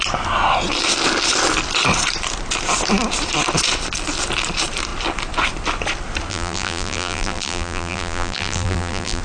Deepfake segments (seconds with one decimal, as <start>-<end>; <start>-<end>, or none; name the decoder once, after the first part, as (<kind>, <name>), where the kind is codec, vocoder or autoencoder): 6.3-9.2 (vocoder, BigVGAN v2)